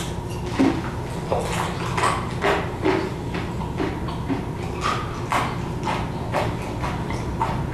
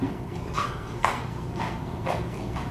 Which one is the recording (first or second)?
first